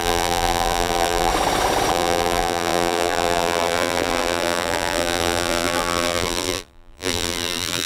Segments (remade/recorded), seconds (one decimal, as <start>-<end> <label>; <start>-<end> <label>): 0.0-1.3 remade; 1.3-1.9 recorded; 1.9-7.9 remade